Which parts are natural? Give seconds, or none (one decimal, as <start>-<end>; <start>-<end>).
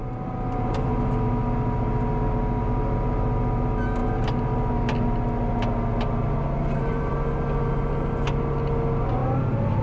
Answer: 0.0-9.8